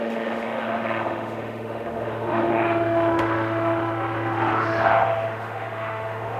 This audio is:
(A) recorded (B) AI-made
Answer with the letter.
B